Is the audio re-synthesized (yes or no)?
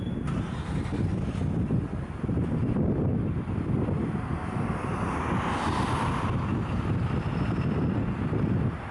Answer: no